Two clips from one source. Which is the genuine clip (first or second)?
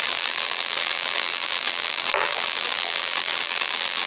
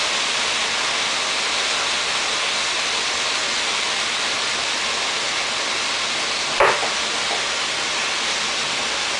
second